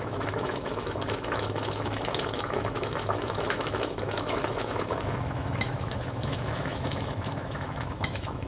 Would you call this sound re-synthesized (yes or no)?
yes